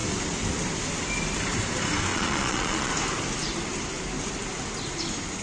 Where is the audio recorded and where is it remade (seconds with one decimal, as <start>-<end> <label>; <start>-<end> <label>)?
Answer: 0.0-2.1 recorded; 2.1-2.9 remade; 2.9-5.4 recorded

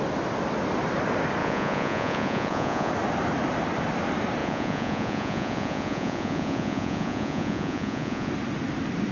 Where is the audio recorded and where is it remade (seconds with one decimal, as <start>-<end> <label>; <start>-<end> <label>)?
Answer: 0.0-1.4 recorded; 1.4-2.9 remade; 2.9-4.4 recorded; 4.4-8.3 remade; 8.3-9.1 recorded

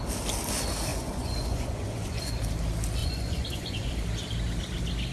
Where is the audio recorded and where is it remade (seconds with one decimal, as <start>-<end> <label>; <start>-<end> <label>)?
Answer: 0.0-0.9 recorded; 0.9-2.3 remade; 2.3-3.0 recorded; 3.0-3.9 remade; 3.9-5.1 recorded

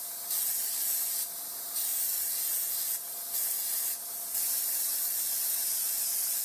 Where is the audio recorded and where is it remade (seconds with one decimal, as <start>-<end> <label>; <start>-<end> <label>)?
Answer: 0.0-6.4 recorded

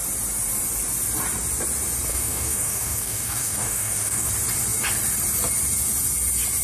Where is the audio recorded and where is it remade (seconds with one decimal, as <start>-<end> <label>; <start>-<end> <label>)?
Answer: 0.0-2.1 recorded; 2.1-4.3 remade; 4.3-6.6 recorded

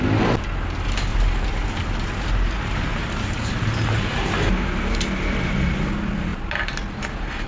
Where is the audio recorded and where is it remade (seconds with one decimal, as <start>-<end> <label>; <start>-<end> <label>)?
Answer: 0.0-1.1 recorded; 1.1-5.6 remade; 5.6-7.5 recorded

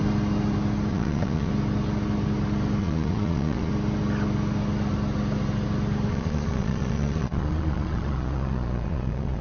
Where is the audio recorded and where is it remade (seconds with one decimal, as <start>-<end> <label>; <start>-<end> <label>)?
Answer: 0.0-0.9 recorded; 0.9-1.5 remade; 1.5-2.8 recorded; 2.8-3.7 remade; 3.7-6.1 recorded; 6.1-9.4 remade

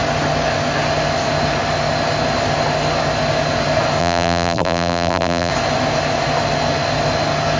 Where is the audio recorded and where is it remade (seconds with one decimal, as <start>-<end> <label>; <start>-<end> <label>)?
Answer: 0.0-4.0 recorded; 4.0-5.5 remade; 5.5-7.6 recorded